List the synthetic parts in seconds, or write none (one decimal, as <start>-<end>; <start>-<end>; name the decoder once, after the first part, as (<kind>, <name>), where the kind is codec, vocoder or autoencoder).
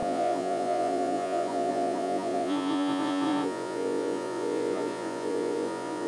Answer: 0.0-6.1 (vocoder, Vocos)